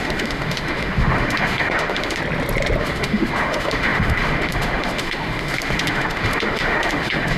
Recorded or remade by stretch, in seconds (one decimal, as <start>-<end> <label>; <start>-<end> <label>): 0.0-2.2 remade; 2.2-2.8 recorded; 2.8-7.4 remade